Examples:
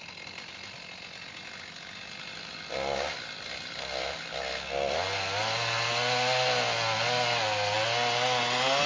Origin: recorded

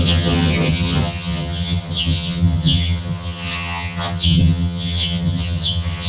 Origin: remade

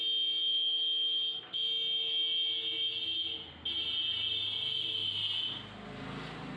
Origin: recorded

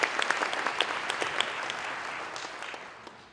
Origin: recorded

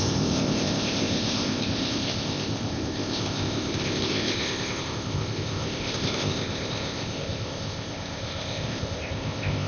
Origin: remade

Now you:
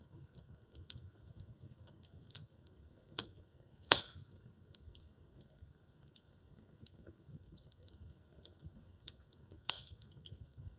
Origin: remade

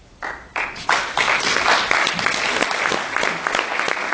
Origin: recorded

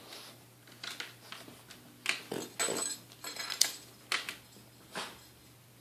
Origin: recorded